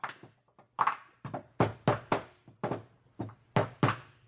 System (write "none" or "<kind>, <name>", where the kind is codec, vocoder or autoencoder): none